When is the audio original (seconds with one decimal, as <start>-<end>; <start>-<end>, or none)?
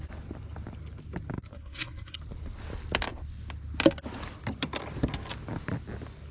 0.0-1.5; 2.2-6.3